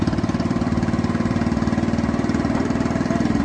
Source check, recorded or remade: remade